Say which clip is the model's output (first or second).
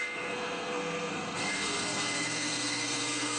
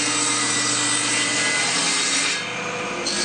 first